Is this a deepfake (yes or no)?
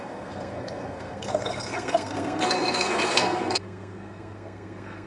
yes